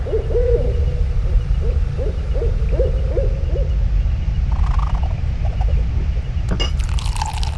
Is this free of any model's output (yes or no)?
yes